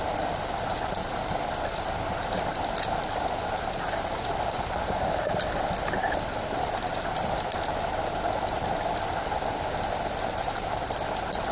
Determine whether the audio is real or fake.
fake